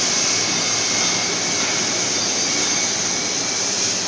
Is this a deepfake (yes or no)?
no